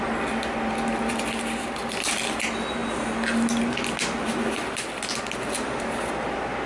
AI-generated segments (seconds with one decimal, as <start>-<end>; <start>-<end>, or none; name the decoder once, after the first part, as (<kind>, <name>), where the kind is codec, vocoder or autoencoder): none